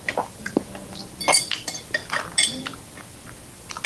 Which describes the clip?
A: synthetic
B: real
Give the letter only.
B